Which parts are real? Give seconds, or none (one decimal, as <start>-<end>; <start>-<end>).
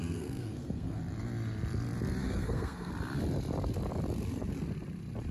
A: 1.0-2.2; 2.9-5.3